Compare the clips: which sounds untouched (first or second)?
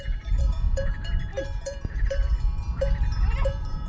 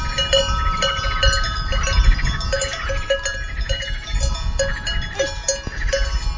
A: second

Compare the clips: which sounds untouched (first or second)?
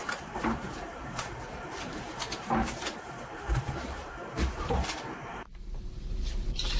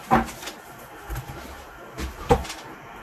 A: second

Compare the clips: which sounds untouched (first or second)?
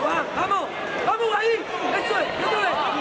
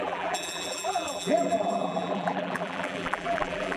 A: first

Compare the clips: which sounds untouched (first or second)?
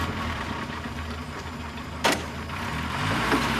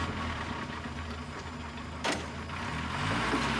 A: second